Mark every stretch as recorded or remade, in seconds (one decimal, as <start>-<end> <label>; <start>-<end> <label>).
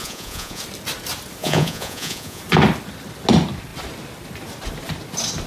0.0-0.6 remade; 0.6-1.4 recorded; 1.4-2.4 remade; 2.4-5.5 recorded